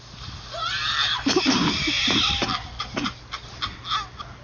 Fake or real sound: real